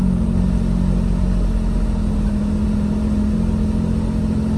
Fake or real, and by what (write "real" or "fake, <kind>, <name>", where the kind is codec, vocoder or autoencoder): real